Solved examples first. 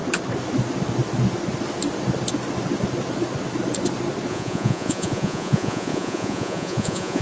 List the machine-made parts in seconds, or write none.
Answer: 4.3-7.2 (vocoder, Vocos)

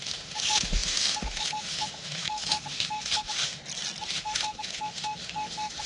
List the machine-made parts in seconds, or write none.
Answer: 0.0-3.6 (autoencoder, DAC-VAE); 4.1-5.9

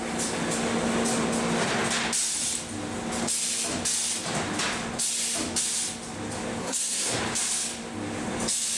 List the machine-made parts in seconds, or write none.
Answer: 6.6-7.2 (codec, SNAC)

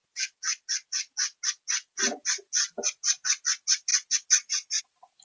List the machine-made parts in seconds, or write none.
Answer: none

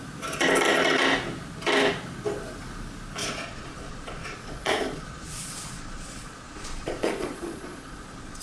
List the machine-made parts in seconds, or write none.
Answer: 3.2-8.4 (vocoder, Vocos)